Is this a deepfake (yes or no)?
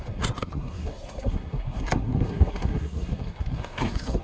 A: yes